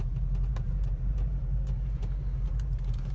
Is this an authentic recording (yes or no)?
no